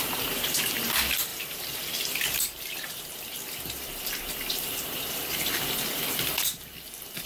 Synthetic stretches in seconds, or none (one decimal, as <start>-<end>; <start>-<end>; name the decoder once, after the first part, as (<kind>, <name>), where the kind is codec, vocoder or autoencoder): none